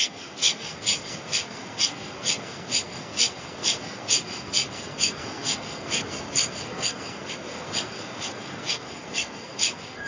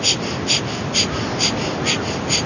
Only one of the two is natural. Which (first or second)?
second